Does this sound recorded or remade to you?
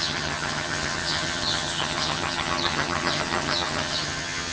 remade